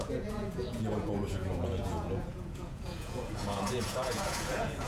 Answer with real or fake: fake